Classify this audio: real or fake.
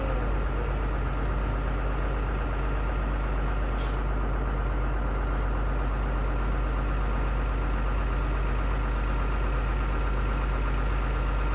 real